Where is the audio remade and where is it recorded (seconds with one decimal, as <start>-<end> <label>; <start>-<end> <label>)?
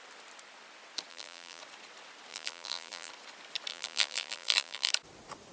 0.0-1.1 recorded; 1.1-1.6 remade; 1.6-2.3 recorded; 2.3-3.1 remade; 3.1-3.7 recorded; 3.7-4.9 remade; 4.9-5.5 recorded